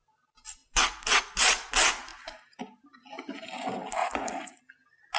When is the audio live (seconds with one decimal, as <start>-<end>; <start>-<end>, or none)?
0.0-4.0; 4.6-5.2